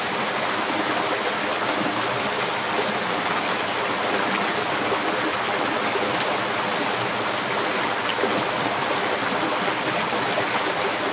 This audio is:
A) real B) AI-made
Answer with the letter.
A